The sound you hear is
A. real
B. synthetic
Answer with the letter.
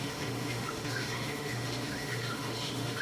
B